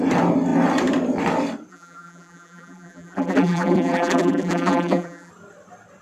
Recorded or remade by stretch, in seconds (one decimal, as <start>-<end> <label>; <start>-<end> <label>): 0.0-1.7 recorded; 1.7-5.3 remade; 5.3-6.0 recorded